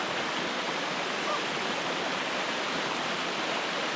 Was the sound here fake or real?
real